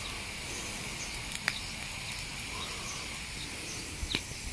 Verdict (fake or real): real